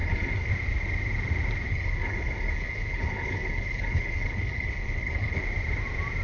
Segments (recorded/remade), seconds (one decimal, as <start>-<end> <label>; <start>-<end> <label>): 0.0-0.5 remade; 0.5-1.7 recorded; 1.7-5.4 remade; 5.4-6.2 recorded